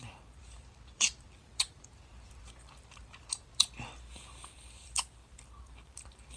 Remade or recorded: remade